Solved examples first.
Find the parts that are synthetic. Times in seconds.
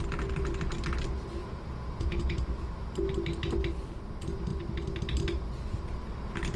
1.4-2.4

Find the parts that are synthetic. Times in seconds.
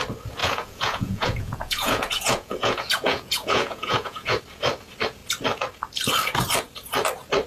0.4-4.4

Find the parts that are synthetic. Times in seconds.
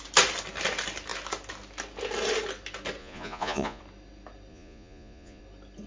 3.0-3.8; 4.5-5.4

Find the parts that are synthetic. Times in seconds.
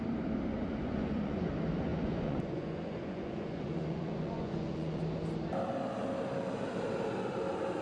0.5-1.5; 1.9-5.0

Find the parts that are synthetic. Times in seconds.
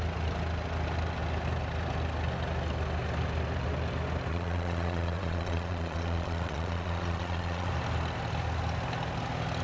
4.3-7.7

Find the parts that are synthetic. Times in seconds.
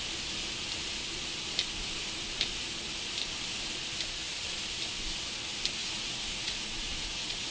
5.8-7.5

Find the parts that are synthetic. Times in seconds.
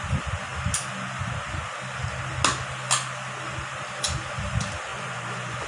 4.9-5.7